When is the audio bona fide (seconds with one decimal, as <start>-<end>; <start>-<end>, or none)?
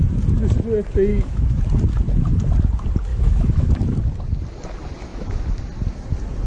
0.0-1.1; 1.6-3.1; 3.7-5.1; 5.6-6.5